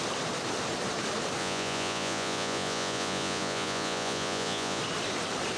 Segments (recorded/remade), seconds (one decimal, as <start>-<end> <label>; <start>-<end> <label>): 0.0-1.4 recorded; 1.4-4.8 remade; 4.8-5.6 recorded